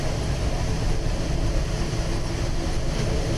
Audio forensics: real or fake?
real